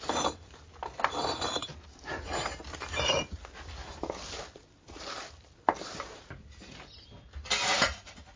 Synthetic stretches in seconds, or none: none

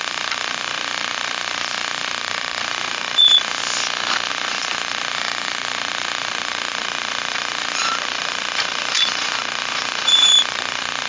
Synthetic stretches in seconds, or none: 0.0-3.6; 4.3-11.1

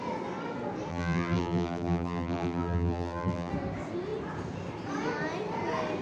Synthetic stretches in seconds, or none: 0.9-3.5

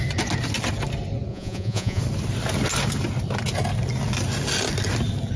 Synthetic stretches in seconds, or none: 1.3-2.0

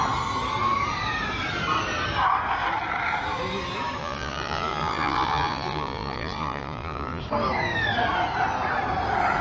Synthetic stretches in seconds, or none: 4.0-7.2